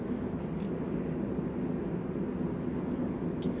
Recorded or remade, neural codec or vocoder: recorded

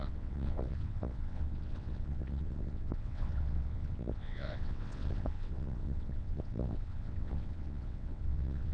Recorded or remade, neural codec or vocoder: remade, vocoder, WaveNeXt